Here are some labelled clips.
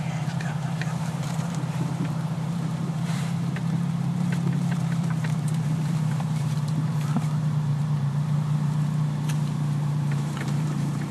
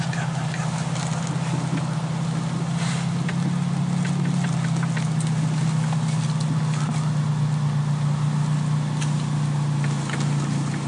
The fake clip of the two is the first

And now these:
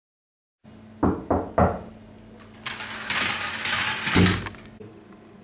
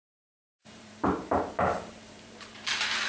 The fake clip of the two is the second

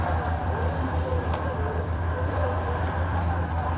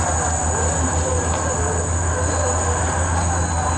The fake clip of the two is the first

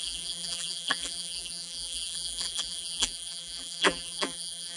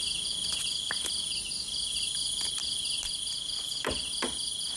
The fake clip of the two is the first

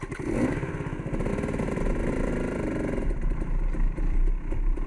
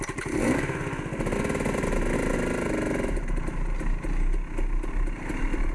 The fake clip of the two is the first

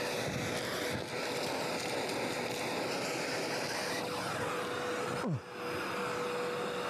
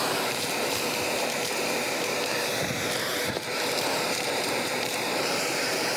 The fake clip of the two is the second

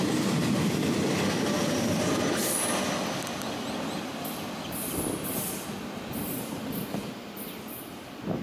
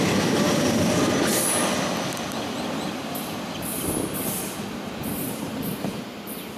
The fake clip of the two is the second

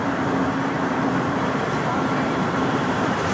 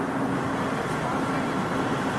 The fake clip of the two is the first